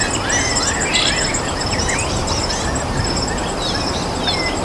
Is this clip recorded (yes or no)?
yes